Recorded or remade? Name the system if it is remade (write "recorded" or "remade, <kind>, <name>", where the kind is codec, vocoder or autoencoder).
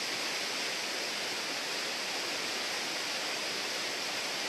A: recorded